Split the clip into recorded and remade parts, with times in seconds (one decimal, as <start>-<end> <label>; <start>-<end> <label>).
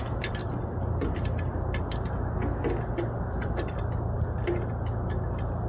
0.0-5.7 recorded